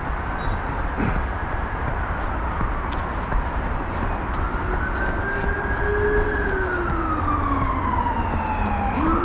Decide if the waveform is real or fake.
real